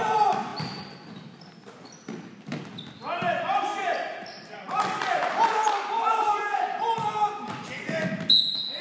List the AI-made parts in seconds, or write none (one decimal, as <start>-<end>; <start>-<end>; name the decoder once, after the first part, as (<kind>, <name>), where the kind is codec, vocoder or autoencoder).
none